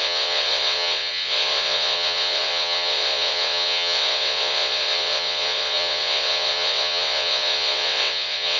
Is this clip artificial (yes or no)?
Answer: yes